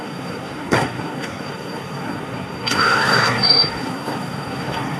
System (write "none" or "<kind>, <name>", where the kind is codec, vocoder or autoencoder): codec, SNAC